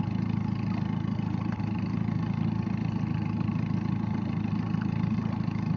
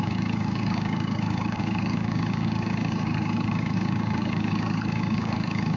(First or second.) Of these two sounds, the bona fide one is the first